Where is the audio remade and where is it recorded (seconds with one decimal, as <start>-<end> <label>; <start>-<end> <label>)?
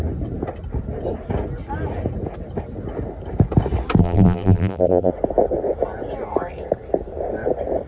0.0-4.0 recorded; 4.0-5.1 remade; 5.1-7.9 recorded